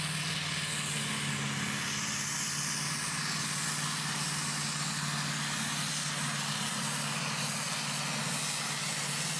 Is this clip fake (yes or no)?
no